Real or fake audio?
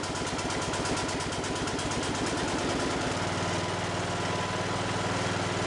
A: real